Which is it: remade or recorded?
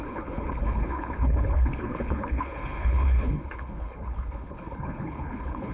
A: remade